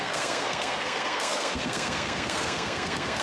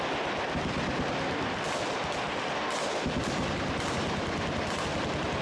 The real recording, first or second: second